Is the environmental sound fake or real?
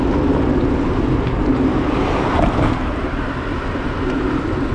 real